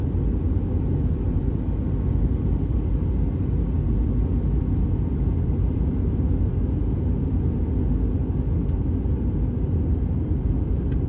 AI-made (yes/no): no